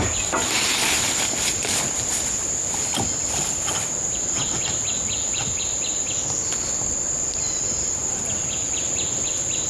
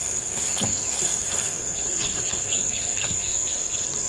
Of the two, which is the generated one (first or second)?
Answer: second